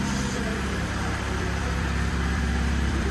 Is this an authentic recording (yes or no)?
no